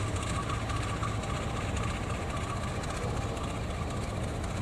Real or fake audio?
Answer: real